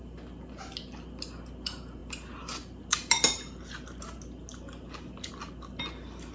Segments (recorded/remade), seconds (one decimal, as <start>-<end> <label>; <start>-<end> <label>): 0.0-6.3 recorded